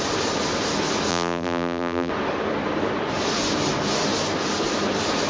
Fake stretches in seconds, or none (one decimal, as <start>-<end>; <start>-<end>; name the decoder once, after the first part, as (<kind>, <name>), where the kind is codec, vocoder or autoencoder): 1.1-2.1 (vocoder, BigVGAN v2)